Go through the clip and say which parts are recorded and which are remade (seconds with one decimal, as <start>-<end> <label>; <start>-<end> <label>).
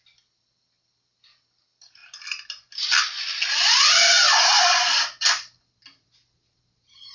0.0-7.1 recorded